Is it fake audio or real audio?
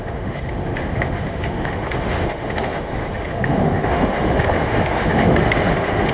fake